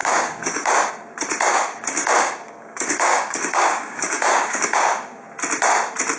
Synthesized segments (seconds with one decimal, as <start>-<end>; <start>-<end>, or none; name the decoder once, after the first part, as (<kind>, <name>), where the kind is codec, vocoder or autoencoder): 0.0-0.9 (codec, DAC); 1.5-5.2